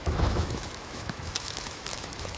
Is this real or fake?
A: fake